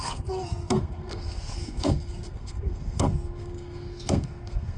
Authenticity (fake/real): fake